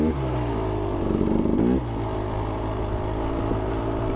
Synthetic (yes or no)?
no